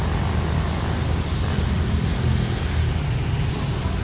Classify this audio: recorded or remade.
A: recorded